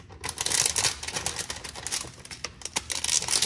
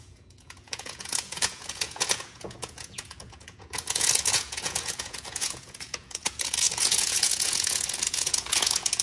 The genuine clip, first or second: first